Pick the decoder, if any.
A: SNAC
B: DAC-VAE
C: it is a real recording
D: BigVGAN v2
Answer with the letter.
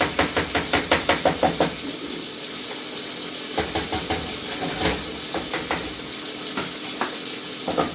C